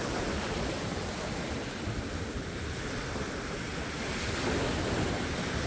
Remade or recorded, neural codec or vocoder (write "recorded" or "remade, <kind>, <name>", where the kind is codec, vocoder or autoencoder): recorded